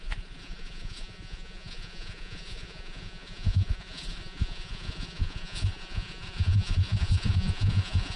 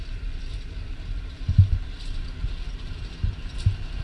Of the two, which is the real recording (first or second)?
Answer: second